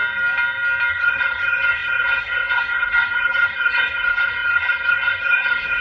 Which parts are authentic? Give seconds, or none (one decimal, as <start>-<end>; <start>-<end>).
0.0-0.9

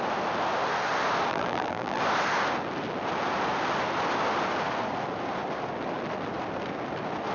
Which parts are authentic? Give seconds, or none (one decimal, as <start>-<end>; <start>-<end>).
0.0-1.3; 2.0-7.3

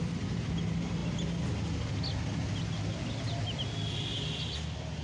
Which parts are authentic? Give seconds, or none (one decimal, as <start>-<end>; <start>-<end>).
0.0-5.0